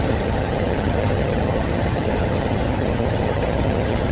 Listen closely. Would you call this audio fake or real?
fake